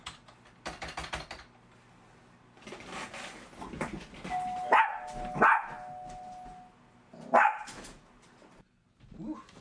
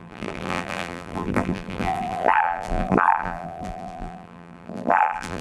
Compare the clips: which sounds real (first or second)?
first